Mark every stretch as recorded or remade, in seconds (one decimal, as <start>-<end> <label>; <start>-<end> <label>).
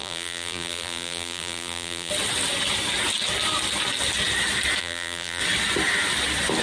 0.0-2.1 remade; 2.1-4.8 recorded; 4.8-5.4 remade; 5.4-6.6 recorded